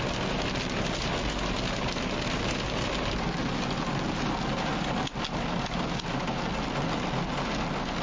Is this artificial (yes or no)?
no